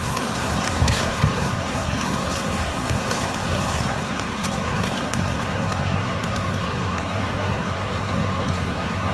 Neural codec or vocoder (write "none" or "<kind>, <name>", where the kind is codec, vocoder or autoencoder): codec, SNAC